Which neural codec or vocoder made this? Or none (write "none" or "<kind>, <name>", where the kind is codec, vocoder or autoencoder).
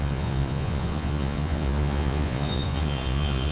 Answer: vocoder, Vocos